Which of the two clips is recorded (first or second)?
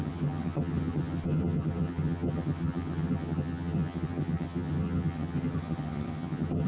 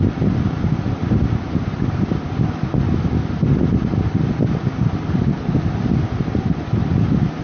second